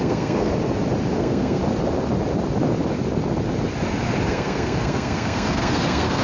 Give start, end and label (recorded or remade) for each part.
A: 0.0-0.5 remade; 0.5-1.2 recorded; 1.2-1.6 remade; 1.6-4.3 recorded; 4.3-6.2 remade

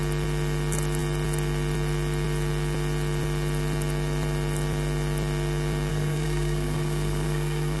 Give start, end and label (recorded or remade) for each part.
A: 0.0-5.9 recorded; 5.9-7.8 remade

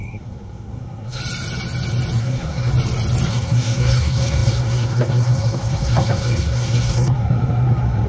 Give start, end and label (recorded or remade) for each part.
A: 0.0-1.2 remade; 1.2-2.2 recorded; 2.2-2.7 remade; 2.7-3.3 recorded; 3.3-8.1 remade

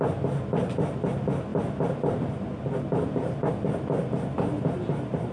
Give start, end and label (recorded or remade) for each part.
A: 0.0-5.3 recorded